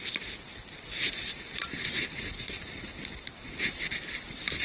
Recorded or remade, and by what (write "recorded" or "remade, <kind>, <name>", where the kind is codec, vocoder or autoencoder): recorded